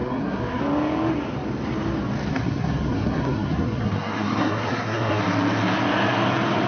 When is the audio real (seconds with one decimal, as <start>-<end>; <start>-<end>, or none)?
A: 0.6-2.3; 5.2-6.7